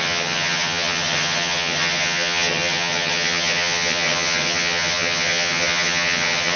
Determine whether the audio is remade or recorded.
remade